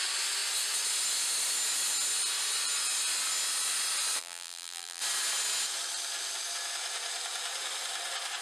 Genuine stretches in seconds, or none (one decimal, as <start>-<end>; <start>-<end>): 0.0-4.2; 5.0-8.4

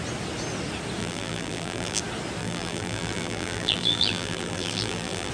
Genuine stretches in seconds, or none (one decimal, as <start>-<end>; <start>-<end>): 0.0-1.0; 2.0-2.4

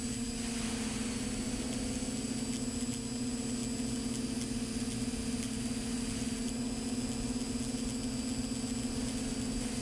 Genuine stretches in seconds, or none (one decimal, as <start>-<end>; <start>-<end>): 0.0-9.8